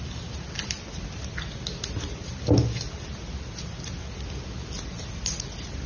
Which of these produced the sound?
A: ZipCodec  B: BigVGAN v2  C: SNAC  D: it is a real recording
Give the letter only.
D